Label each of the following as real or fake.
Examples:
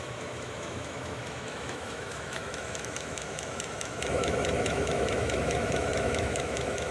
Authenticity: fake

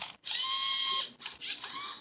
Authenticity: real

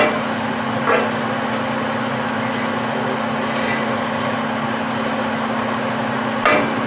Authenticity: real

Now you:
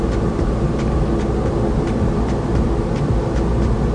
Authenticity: real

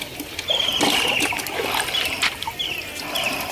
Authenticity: real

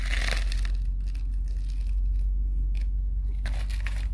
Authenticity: real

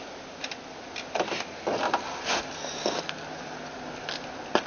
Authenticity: real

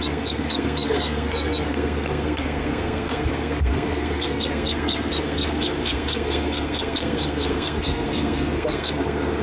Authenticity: fake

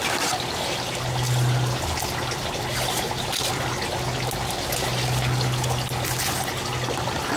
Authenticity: real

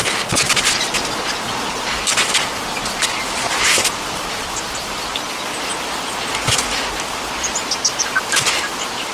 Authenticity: real